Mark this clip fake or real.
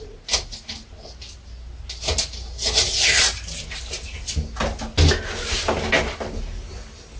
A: real